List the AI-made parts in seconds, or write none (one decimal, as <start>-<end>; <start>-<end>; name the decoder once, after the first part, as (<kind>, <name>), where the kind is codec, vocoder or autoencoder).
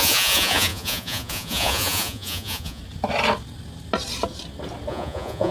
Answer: 0.0-2.8 (vocoder, Vocos); 4.9-5.5